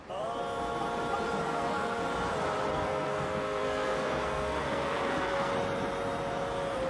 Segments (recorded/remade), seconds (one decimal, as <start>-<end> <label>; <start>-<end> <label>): 0.0-1.4 recorded; 1.4-2.0 remade; 2.0-2.7 recorded; 2.7-5.5 remade; 5.5-6.9 recorded